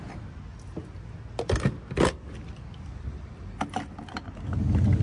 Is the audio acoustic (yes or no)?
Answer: yes